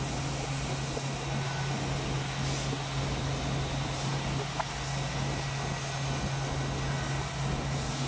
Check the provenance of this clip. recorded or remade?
recorded